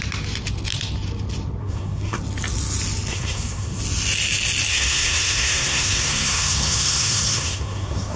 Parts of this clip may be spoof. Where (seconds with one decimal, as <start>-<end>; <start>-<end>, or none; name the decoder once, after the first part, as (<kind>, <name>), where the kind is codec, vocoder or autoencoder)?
1.6-2.2 (codec, SNAC); 3.1-3.8; 4.7-8.2